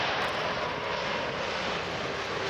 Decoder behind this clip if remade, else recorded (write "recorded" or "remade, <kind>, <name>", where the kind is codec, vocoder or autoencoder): recorded